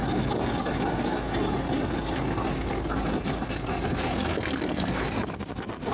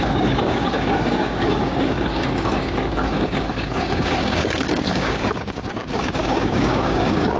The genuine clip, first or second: first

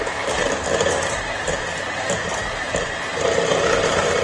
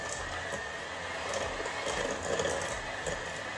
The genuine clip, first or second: second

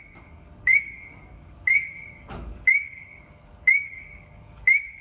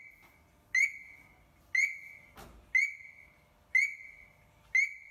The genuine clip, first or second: second